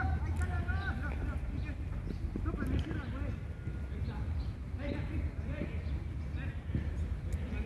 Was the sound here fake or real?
real